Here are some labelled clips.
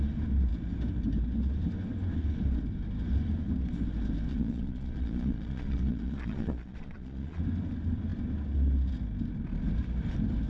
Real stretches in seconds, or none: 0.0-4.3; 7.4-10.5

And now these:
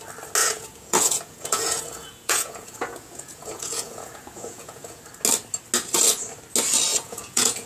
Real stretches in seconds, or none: 0.0-0.4; 5.0-6.9

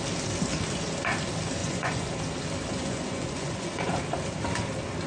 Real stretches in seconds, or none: 0.0-1.6; 2.1-2.7; 3.9-5.1

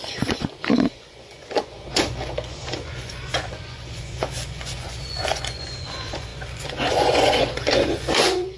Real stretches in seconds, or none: none

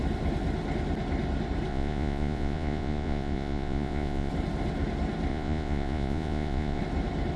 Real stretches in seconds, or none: 0.0-1.7; 4.3-5.3; 6.8-7.4